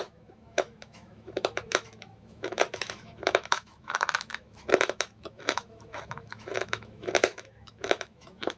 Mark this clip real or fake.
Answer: fake